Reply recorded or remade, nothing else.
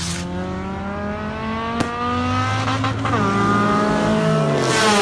recorded